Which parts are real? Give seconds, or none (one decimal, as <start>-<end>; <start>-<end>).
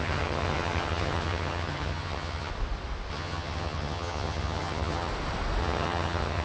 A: 2.5-3.1; 5.1-5.6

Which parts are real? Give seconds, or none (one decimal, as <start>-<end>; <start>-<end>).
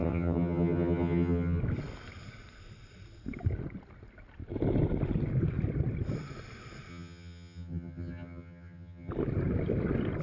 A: 1.6-6.9; 9.1-10.2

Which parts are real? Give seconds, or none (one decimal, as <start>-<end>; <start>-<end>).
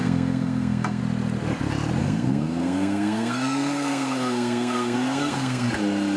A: 1.0-2.0; 5.7-6.2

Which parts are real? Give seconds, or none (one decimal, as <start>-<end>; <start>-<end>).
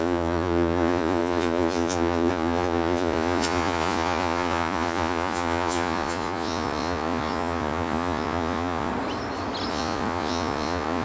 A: 8.9-9.7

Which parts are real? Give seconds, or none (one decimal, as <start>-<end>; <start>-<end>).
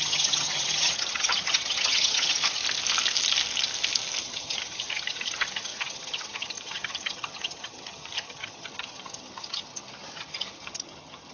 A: 2.6-4.2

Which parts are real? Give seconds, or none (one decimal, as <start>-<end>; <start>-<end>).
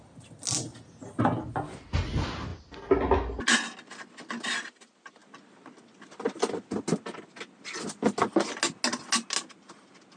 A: 0.0-10.2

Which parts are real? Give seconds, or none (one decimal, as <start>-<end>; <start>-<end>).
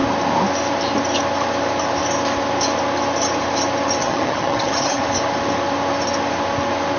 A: 0.0-4.0; 5.0-7.0